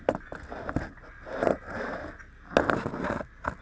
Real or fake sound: real